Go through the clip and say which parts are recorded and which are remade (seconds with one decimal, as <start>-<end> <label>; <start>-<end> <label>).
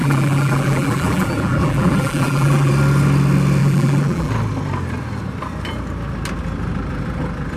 0.0-2.7 remade; 2.7-3.6 recorded; 3.6-4.3 remade; 4.3-7.6 recorded